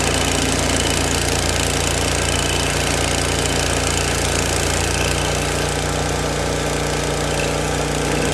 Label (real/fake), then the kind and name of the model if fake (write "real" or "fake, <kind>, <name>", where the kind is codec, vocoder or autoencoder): real